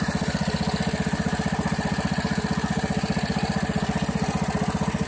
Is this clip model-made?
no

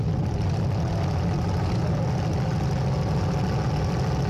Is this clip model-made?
no